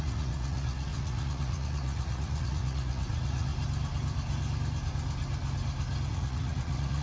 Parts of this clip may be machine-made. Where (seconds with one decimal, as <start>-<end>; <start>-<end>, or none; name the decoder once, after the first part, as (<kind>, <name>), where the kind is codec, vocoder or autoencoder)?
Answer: 0.0-3.5 (vocoder, Vocos); 6.1-7.0

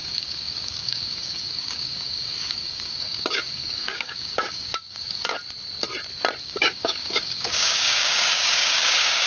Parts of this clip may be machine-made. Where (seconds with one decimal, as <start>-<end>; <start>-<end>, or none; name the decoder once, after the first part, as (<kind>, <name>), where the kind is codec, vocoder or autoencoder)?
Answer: 0.0-5.4 (codec, DAC); 6.4-9.3

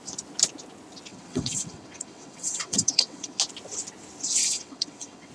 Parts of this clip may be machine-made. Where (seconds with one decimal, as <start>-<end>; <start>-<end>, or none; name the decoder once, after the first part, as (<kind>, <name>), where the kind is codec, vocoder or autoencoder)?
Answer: 1.1-3.4 (vocoder, WaveNeXt); 4.4-5.3

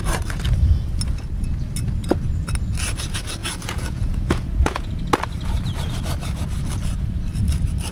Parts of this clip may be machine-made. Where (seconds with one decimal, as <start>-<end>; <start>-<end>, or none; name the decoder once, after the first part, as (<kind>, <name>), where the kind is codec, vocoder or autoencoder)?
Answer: 3.4-4.9 (vocoder, Vocos)

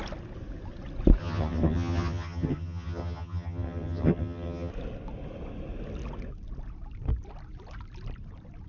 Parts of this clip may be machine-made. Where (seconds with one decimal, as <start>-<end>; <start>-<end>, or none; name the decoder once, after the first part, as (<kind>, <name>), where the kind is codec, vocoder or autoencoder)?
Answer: 1.2-4.7 (vocoder, HiFi-GAN)